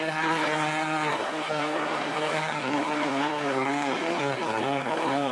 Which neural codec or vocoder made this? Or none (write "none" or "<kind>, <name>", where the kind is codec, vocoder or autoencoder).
codec, SNAC